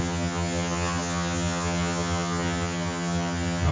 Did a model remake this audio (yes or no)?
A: yes